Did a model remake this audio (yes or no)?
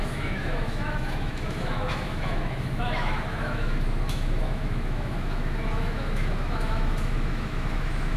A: yes